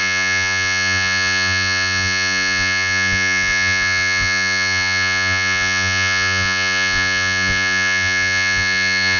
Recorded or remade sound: remade